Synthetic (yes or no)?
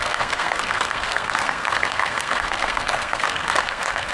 yes